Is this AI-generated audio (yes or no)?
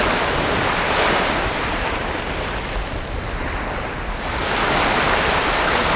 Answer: no